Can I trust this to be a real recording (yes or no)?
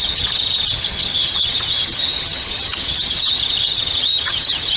no